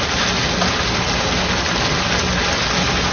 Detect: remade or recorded recorded